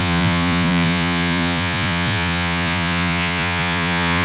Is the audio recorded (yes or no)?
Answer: no